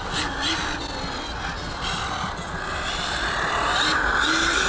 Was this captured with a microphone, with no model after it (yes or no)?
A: yes